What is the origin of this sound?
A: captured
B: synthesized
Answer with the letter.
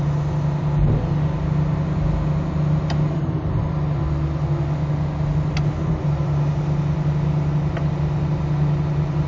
A